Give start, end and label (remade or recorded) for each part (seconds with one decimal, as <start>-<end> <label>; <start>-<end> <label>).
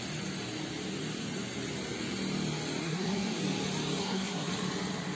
0.0-2.8 recorded; 2.8-3.4 remade; 3.4-4.0 recorded; 4.0-4.5 remade; 4.5-5.1 recorded